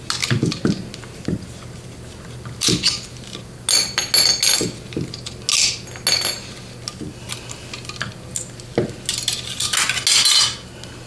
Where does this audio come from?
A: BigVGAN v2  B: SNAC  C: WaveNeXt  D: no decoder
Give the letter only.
D